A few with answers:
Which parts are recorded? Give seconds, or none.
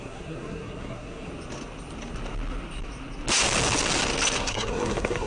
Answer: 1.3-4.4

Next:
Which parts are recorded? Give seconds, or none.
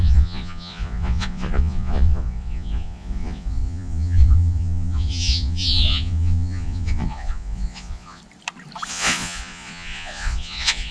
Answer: 8.2-8.9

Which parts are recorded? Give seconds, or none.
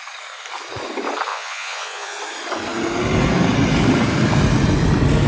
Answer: 0.0-1.3; 2.2-5.3